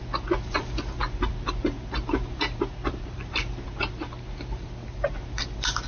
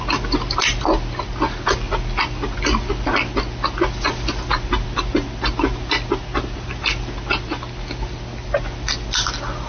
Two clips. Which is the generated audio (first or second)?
first